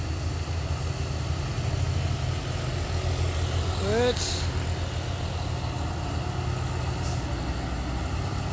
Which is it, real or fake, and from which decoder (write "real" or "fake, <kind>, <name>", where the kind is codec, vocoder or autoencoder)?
real